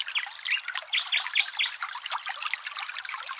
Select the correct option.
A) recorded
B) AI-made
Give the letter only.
A